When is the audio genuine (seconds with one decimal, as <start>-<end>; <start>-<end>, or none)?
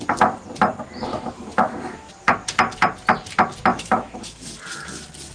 0.0-1.1; 2.1-3.7; 4.6-5.3